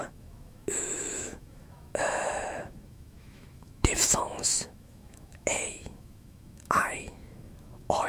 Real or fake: fake